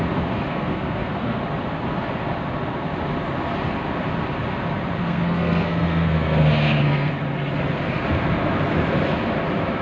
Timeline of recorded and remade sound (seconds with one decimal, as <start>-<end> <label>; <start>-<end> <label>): 0.0-0.5 recorded; 0.5-1.4 remade; 1.4-5.0 recorded; 5.0-7.1 remade; 7.1-9.8 recorded

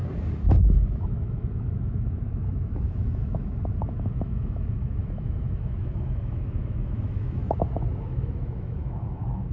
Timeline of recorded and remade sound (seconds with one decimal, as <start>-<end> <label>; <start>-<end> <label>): 0.0-1.0 recorded; 1.0-7.4 remade; 7.4-8.0 recorded; 8.0-9.5 remade